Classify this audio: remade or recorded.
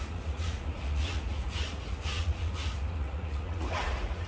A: remade